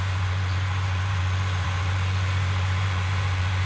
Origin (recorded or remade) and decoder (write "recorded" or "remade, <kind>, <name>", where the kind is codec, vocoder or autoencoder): remade, vocoder, Vocos